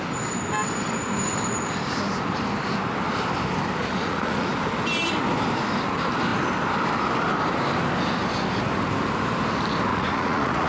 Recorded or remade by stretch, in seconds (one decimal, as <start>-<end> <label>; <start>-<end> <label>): 0.0-3.8 recorded; 3.8-4.5 remade; 4.5-9.9 recorded; 9.9-10.7 remade